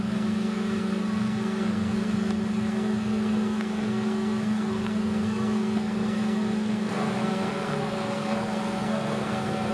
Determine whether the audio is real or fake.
fake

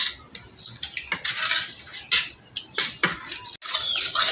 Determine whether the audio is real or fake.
real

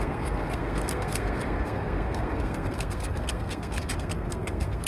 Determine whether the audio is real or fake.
fake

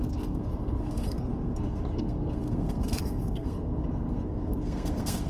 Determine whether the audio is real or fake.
fake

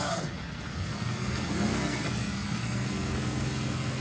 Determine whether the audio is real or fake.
fake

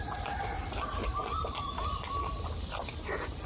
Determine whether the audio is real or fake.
real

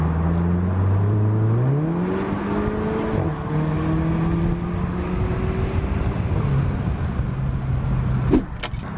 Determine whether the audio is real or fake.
real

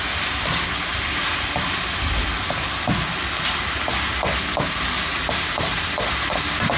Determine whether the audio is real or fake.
real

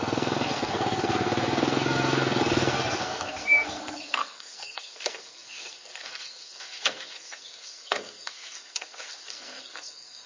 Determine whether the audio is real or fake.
fake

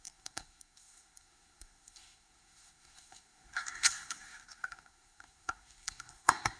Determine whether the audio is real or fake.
fake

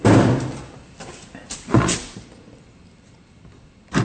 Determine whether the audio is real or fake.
real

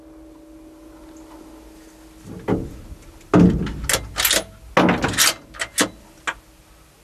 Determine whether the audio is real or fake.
real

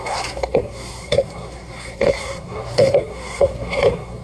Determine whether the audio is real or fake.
fake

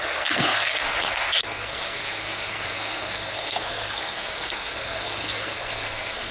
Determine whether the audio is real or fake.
fake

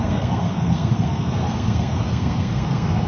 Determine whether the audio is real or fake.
fake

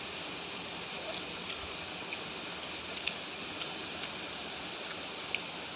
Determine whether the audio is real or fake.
real